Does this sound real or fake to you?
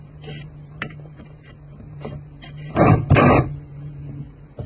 fake